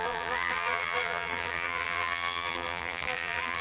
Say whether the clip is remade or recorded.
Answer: remade